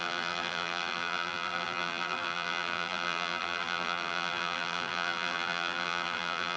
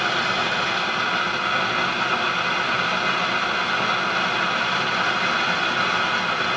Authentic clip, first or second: second